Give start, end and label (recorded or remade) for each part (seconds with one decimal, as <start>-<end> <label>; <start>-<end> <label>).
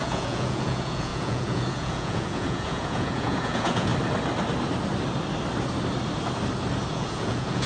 0.0-3.9 remade; 3.9-6.9 recorded; 6.9-7.7 remade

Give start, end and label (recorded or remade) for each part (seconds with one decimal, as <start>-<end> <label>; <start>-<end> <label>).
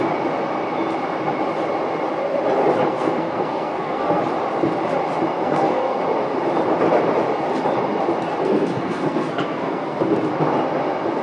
0.0-2.9 recorded; 2.9-4.2 remade; 4.2-5.3 recorded; 5.3-6.0 remade; 6.0-8.4 recorded; 8.4-10.1 remade; 10.1-11.2 recorded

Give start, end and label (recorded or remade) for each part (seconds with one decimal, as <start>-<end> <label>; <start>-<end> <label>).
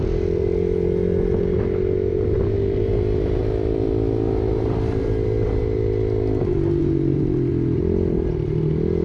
0.0-2.1 recorded; 2.1-2.9 remade; 2.9-6.8 recorded; 6.8-7.5 remade; 7.5-9.0 recorded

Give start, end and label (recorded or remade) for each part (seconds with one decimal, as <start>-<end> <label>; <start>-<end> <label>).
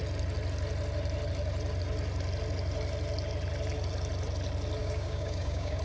0.0-4.8 recorded; 4.8-5.8 remade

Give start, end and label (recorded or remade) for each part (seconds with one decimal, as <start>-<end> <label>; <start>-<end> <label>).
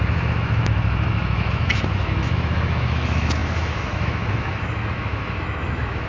0.0-6.1 remade